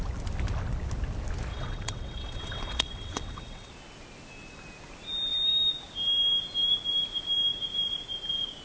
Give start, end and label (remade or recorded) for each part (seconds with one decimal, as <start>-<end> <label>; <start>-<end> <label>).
0.0-1.5 recorded; 1.5-3.7 remade; 3.7-8.6 recorded